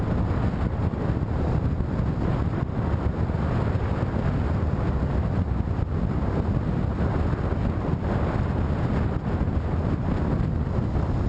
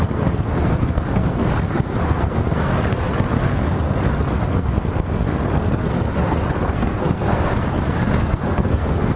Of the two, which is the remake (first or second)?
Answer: second